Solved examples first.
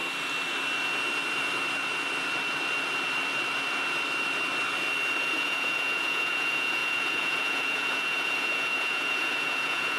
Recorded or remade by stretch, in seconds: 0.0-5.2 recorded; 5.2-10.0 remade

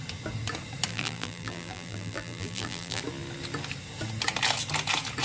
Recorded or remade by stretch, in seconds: 0.0-0.9 recorded; 0.9-3.0 remade; 3.0-5.2 recorded

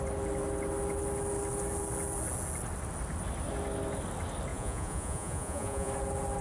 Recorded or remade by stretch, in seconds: 0.0-4.5 recorded; 4.5-5.9 remade; 5.9-6.4 recorded

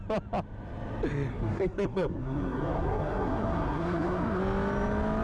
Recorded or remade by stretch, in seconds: 0.0-1.3 recorded; 1.3-4.4 remade; 4.4-5.2 recorded

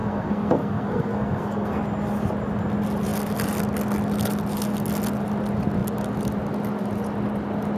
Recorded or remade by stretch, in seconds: 0.0-1.8 remade; 1.8-7.8 recorded

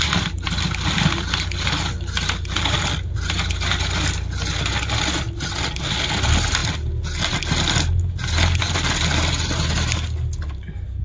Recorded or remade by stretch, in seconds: 0.0-11.0 recorded